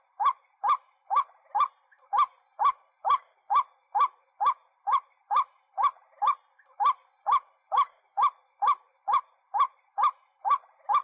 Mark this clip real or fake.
fake